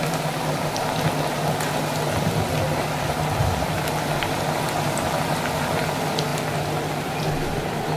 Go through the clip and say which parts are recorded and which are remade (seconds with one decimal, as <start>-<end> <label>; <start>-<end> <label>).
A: 0.0-8.0 recorded